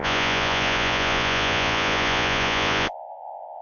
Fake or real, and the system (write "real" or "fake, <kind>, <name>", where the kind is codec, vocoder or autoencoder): fake, vocoder, Vocos